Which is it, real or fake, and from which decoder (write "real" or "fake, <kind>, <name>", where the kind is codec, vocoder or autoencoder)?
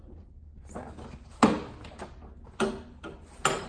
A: real